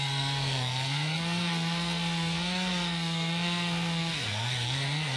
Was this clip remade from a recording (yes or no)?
yes